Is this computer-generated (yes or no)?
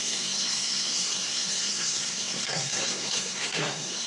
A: yes